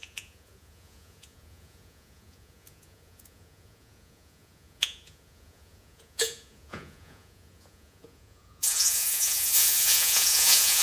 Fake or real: fake